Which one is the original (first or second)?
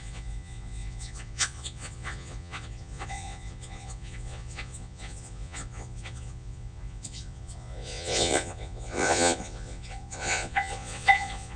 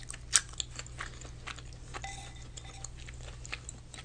second